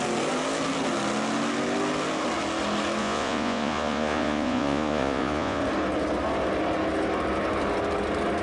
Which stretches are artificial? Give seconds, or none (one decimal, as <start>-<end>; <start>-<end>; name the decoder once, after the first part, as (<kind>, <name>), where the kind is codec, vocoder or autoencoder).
3.0-5.6 (vocoder, Vocos)